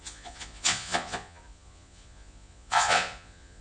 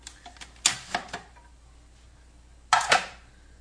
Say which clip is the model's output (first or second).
first